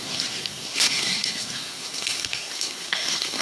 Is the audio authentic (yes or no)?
no